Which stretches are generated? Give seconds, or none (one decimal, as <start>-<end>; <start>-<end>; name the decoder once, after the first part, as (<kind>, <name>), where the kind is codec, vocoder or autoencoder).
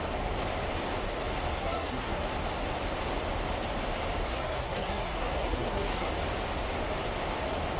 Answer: 1.6-2.2 (codec, SNAC); 4.3-6.1